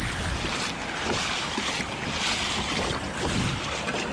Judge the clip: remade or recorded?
recorded